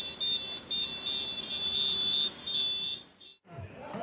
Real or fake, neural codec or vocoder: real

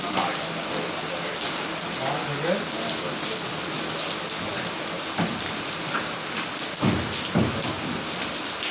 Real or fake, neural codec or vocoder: real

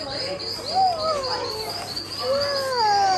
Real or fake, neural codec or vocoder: real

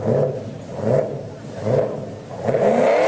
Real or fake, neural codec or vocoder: real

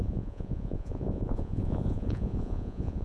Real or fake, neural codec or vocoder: fake, vocoder, Vocos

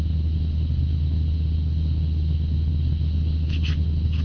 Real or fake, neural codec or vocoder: real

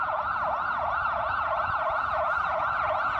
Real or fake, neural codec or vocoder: fake, vocoder, Vocos